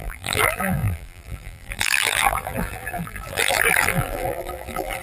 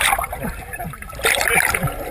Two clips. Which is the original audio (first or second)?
second